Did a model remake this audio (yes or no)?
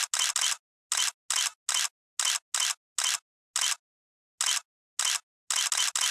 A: no